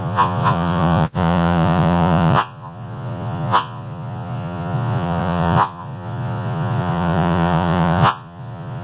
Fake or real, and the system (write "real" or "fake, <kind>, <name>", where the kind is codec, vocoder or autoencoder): fake, vocoder, Vocos